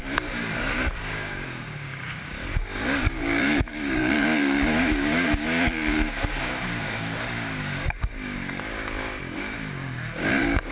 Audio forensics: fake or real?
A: fake